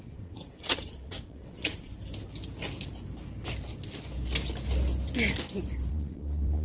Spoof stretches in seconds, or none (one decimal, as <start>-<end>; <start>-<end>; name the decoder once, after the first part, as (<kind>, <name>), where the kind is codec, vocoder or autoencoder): 0.0-1.9 (vocoder, WaveNeXt); 5.9-6.6